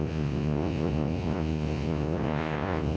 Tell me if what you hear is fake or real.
fake